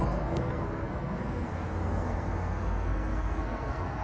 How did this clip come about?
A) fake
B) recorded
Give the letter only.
A